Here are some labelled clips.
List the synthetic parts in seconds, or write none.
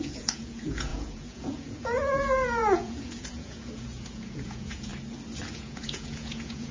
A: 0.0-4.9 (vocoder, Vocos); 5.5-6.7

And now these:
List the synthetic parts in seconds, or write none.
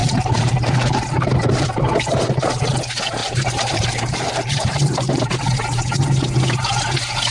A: 0.0-2.8 (vocoder, BigVGAN v2); 3.2-5.4